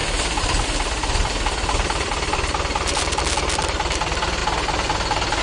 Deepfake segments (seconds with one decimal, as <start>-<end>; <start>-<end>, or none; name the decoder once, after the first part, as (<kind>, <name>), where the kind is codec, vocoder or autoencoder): 0.0-4.4 (vocoder, BigVGAN v2)